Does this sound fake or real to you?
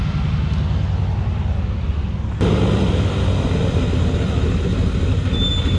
real